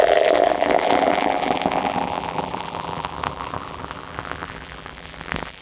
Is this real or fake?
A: fake